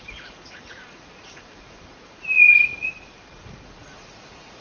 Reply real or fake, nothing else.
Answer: fake